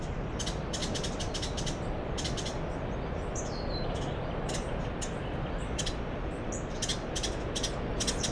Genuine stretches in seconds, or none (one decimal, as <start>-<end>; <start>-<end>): 0.0-0.8; 4.5-6.9; 7.5-8.3